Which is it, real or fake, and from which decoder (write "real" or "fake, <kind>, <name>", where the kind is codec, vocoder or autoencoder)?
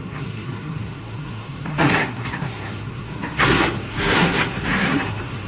fake, codec, SNAC